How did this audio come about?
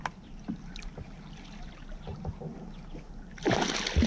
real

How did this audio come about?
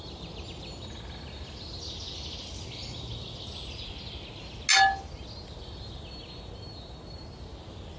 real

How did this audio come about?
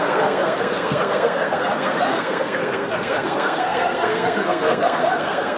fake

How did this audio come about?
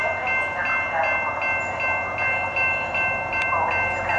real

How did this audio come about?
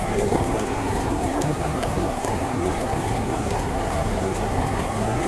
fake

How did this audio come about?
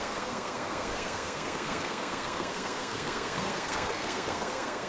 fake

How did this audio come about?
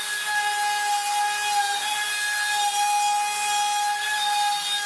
real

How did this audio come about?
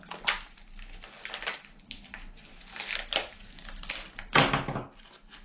real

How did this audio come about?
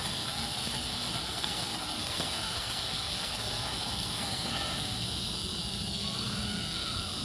fake